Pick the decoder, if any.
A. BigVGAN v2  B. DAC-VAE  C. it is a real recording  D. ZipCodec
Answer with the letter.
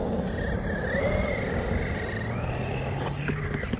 C